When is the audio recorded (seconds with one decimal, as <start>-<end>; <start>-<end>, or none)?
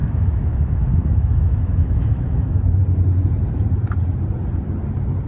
2.8-5.3